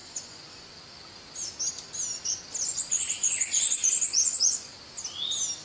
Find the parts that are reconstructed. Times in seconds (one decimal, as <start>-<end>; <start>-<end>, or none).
0.0-0.8; 2.7-4.7